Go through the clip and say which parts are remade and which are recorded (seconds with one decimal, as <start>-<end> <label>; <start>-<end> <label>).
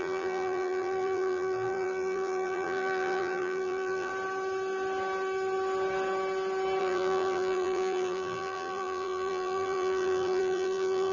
0.0-4.1 remade; 4.1-6.8 recorded; 6.8-11.1 remade